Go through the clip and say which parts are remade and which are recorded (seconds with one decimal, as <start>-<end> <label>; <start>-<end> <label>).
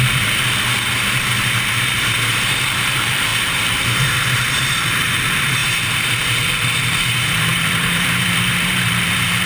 0.0-9.5 remade